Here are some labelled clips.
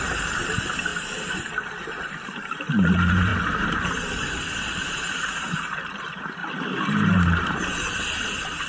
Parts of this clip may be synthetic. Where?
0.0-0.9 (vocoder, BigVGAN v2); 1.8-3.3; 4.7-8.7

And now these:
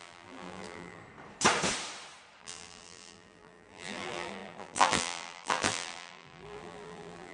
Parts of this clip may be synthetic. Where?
0.0-1.0 (vocoder, BigVGAN v2); 2.4-7.3